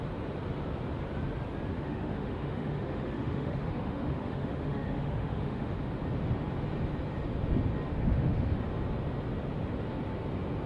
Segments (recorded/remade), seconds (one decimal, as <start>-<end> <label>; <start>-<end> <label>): 0.0-1.7 recorded; 1.7-5.7 remade; 5.7-7.9 recorded; 7.9-8.6 remade; 8.6-10.7 recorded